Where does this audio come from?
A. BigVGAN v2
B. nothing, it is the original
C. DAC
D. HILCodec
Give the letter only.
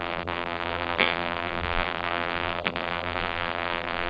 A